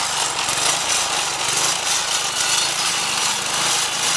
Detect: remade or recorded recorded